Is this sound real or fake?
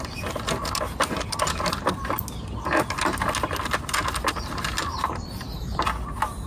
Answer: real